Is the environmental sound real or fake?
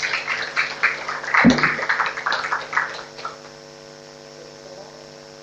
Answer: real